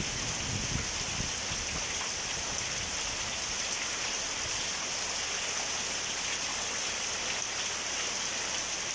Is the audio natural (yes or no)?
yes